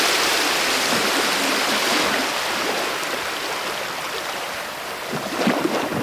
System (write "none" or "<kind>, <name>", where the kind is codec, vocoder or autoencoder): none